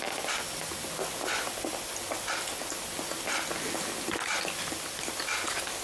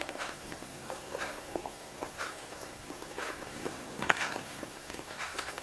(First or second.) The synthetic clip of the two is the second